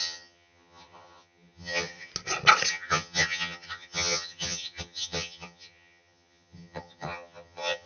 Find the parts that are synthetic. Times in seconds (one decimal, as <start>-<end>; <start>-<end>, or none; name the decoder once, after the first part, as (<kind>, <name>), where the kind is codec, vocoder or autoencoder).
0.0-2.1 (vocoder, HiFi-GAN); 2.7-7.9